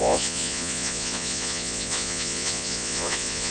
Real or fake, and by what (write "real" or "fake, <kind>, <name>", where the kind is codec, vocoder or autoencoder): fake, vocoder, Vocos